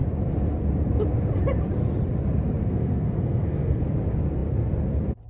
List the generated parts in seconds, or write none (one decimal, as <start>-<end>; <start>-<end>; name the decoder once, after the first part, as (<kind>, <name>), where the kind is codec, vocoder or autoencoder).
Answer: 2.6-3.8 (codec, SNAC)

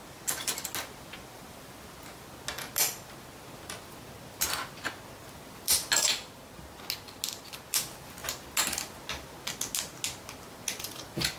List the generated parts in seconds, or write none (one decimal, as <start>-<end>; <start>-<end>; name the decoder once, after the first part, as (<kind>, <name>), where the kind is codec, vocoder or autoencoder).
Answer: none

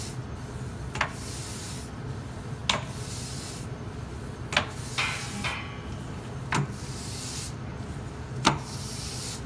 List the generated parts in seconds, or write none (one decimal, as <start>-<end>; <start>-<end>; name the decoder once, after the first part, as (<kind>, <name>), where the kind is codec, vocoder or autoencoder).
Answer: none